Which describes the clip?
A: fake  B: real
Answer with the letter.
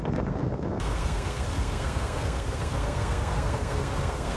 A